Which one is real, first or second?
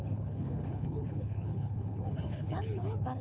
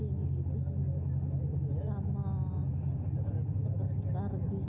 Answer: second